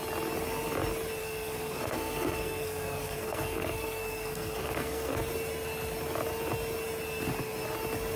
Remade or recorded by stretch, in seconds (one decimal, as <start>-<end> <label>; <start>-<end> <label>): 0.0-1.2 recorded; 1.2-5.3 remade; 5.3-8.2 recorded